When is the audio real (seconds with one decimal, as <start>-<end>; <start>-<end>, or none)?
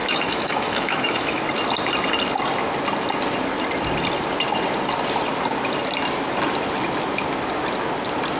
1.4-8.4